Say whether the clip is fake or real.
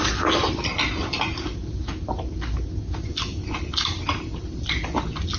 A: real